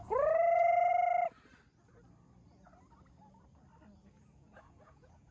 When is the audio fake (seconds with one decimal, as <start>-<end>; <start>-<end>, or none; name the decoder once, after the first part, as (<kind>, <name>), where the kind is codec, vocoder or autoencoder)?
0.0-0.9 (vocoder, Vocos); 4.1-5.3